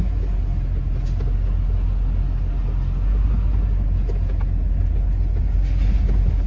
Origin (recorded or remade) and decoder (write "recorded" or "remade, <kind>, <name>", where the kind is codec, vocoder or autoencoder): recorded